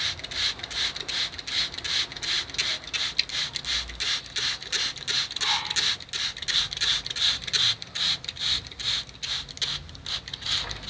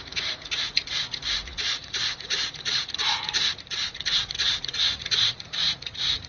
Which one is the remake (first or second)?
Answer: second